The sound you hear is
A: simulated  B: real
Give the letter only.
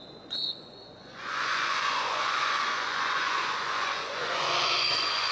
A